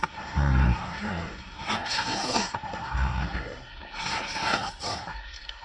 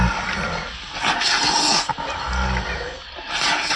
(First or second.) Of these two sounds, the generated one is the first